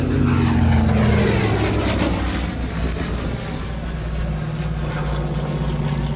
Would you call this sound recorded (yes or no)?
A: yes